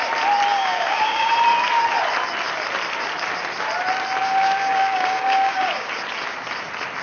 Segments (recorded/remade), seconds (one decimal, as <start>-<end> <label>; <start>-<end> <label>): 0.0-0.5 recorded; 0.5-1.3 remade; 1.3-4.2 recorded; 4.2-5.9 remade; 5.9-7.0 recorded